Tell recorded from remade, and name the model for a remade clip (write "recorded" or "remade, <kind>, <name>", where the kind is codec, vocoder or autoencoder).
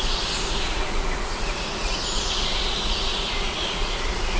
remade, vocoder, Vocos